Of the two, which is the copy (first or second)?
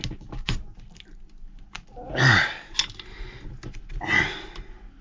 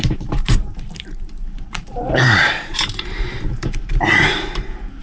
second